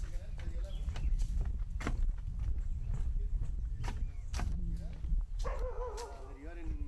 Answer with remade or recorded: recorded